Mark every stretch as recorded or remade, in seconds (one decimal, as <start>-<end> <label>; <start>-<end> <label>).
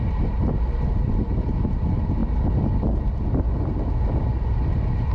0.0-5.1 recorded